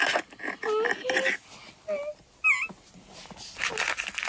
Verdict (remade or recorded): recorded